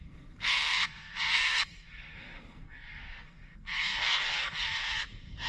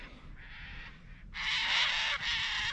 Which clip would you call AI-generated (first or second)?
first